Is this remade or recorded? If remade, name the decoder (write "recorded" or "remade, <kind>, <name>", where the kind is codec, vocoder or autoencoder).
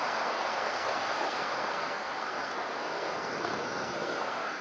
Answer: remade, codec, SNAC